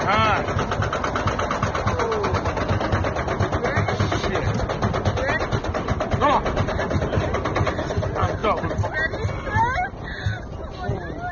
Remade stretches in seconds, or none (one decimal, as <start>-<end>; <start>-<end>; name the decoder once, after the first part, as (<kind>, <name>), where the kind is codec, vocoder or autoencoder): none